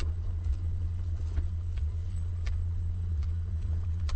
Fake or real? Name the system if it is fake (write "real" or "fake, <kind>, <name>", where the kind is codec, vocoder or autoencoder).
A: fake, vocoder, Vocos